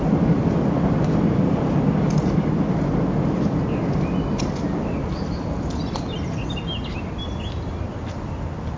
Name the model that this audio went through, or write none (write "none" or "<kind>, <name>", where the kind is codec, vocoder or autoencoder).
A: none